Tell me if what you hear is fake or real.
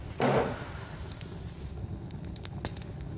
real